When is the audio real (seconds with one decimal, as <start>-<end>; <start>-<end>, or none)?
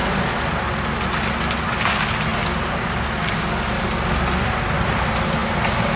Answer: 0.0-6.0